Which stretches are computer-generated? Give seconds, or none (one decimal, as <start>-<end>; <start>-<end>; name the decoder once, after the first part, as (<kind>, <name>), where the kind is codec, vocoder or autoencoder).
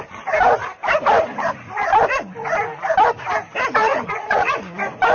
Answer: 3.8-4.6 (vocoder, Vocos)